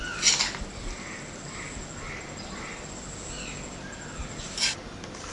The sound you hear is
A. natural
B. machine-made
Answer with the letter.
A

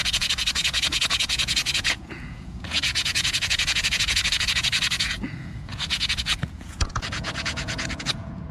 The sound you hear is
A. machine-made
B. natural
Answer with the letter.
A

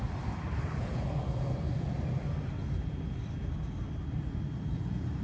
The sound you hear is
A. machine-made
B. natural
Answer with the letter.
A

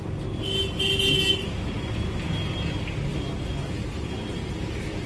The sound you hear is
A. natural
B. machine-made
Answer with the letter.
A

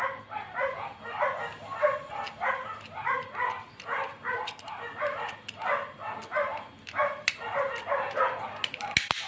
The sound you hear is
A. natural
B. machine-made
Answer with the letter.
A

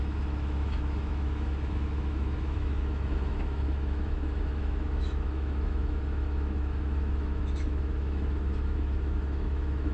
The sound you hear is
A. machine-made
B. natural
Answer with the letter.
A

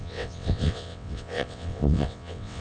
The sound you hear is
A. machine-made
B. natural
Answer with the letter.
A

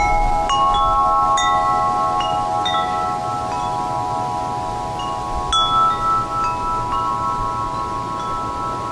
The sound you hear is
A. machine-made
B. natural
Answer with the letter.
B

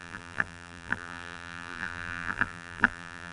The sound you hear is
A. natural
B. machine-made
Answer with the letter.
B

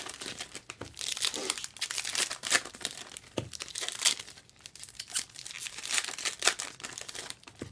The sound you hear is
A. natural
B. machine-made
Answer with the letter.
B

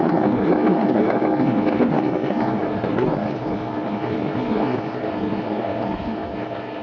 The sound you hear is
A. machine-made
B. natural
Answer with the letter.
A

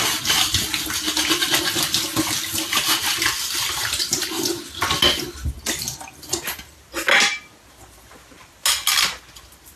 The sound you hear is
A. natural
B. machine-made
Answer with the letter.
A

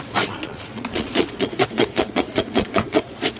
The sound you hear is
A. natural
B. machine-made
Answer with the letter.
B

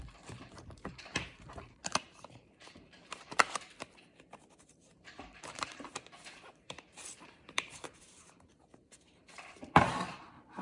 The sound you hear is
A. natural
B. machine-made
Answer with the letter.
B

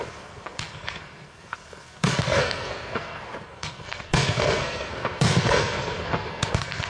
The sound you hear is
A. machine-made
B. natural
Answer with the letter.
A